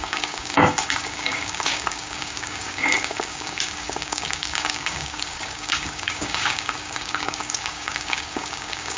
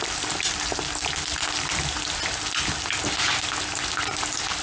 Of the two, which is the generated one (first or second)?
first